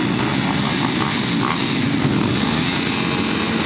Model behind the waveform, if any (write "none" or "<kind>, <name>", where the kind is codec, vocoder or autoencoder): none